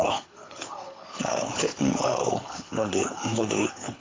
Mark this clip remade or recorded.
remade